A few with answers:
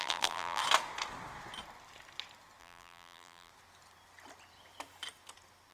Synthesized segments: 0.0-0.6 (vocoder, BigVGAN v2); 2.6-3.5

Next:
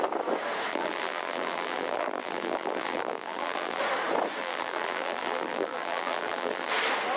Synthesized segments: 0.7-3.8 (vocoder, BigVGAN v2); 4.4-6.7

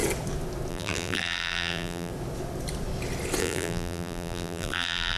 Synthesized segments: 0.7-2.1 (vocoder, BigVGAN v2); 3.4-5.2

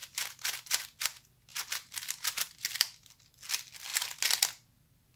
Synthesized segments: 0.0-0.8 (vocoder, BigVGAN v2); 1.5-2.5

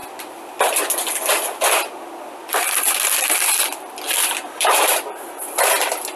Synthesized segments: none

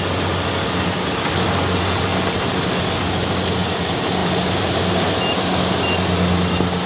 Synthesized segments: 2.1-2.8 (vocoder, BigVGAN v2); 4.2-4.9

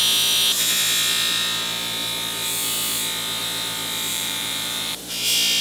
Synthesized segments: 4.1-5.0 (vocoder, BigVGAN v2)

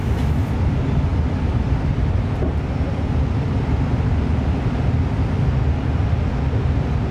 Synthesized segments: 1.1-3.9 (vocoder, BigVGAN v2)